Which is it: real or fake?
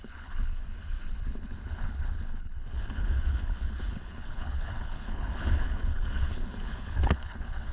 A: fake